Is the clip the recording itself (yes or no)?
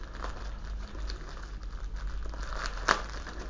yes